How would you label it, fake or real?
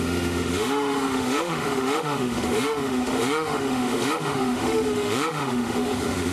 fake